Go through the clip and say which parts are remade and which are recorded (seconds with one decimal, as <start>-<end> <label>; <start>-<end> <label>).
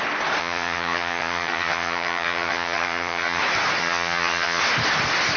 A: 0.0-0.4 recorded; 0.4-3.4 remade; 3.4-3.8 recorded; 3.8-4.6 remade; 4.6-5.4 recorded